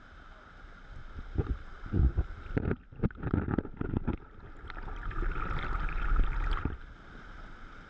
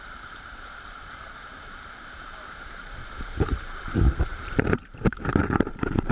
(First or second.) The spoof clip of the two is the second